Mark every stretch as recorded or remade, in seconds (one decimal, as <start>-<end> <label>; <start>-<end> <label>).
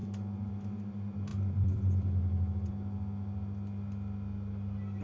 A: 0.0-0.5 remade; 0.5-1.3 recorded; 1.3-2.7 remade; 2.7-5.0 recorded